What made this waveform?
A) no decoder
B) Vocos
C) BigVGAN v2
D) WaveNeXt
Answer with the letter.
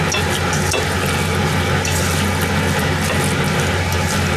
A